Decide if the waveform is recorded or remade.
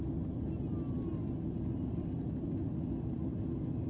recorded